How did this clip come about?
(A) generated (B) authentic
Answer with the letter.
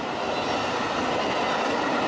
B